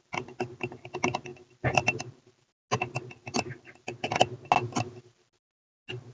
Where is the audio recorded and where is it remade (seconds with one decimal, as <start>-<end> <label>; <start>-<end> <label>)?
0.0-6.1 recorded